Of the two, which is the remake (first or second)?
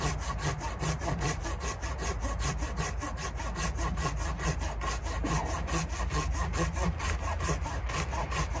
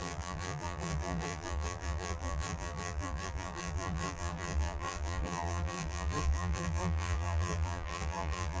second